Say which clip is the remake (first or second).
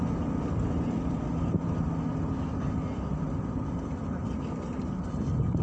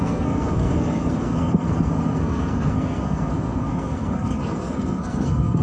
second